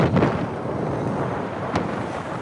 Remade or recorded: recorded